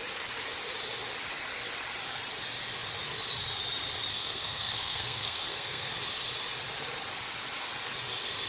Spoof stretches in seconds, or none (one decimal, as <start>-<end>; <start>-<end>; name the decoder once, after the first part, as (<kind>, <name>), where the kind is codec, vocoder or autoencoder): 4.1-5.9 (codec, SNAC)